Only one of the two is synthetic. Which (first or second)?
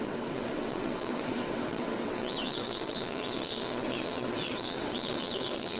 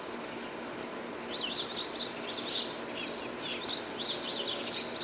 first